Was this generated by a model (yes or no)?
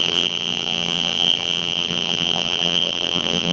yes